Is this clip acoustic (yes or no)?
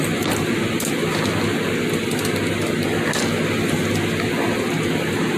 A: yes